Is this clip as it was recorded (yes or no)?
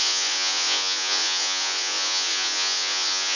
no